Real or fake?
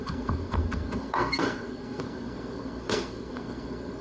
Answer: fake